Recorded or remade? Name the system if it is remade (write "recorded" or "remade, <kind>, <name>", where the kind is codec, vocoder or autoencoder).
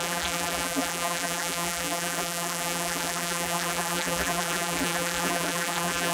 remade, vocoder, BigVGAN v2